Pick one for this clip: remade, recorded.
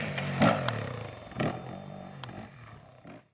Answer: remade